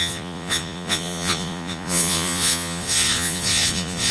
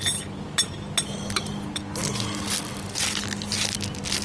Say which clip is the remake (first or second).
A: first